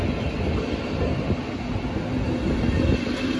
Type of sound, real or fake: real